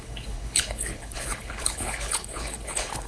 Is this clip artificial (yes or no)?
yes